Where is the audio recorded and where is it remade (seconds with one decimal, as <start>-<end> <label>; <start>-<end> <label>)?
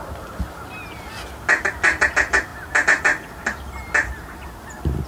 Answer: 0.0-5.1 recorded